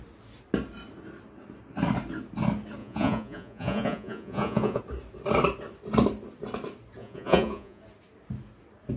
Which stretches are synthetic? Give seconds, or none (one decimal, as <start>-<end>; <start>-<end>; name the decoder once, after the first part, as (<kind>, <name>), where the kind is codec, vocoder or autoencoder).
2.8-4.8 (vocoder, Vocos); 7.0-7.8